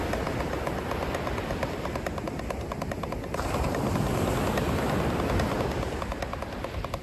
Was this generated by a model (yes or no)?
no